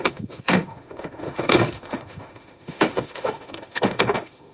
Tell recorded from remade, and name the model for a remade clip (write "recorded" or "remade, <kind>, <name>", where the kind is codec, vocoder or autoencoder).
remade, autoencoder, DAC-VAE